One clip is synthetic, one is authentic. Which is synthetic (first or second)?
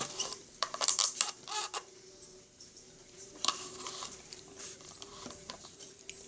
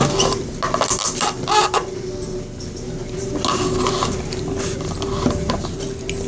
first